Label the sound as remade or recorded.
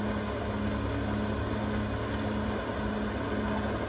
recorded